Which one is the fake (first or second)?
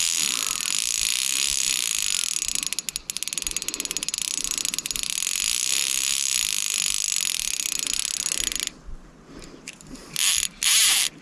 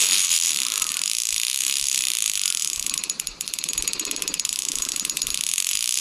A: second